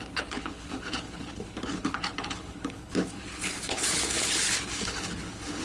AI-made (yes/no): yes